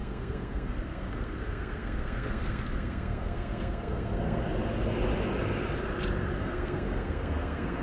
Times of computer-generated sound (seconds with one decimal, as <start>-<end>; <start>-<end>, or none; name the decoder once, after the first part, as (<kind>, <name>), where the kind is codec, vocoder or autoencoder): 0.0-4.5 (codec, SNAC); 6.4-7.8